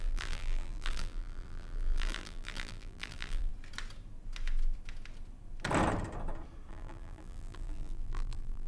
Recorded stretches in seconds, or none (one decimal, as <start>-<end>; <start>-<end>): 3.5-6.7